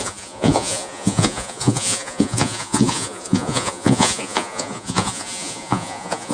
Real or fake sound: fake